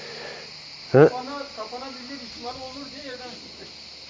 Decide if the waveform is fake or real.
real